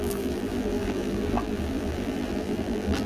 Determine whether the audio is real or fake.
fake